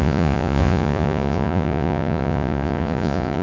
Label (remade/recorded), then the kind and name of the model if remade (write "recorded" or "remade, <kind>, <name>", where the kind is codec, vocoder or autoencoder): remade, vocoder, Vocos